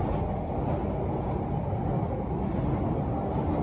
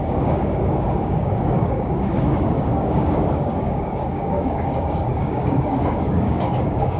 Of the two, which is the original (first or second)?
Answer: first